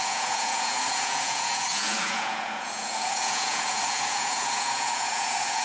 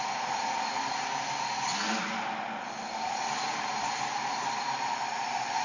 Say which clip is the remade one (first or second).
first